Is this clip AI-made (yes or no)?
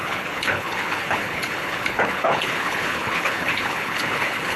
yes